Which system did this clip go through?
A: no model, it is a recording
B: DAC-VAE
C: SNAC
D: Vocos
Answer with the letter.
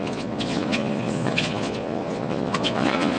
D